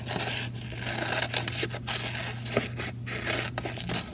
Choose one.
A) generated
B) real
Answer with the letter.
B